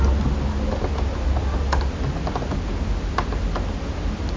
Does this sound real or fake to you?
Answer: real